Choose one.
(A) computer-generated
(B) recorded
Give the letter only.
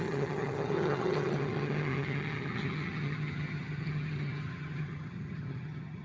A